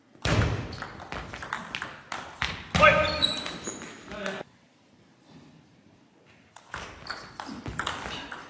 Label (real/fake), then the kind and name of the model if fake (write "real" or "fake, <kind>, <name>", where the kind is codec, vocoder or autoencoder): real